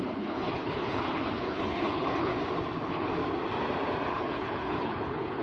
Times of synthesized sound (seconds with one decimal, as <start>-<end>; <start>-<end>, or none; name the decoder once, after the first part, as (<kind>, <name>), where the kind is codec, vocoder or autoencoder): 0.0-2.3 (codec, HILCodec); 2.8-3.2; 4.1-5.4